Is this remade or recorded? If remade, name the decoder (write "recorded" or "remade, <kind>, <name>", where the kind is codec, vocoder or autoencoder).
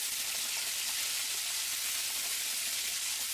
recorded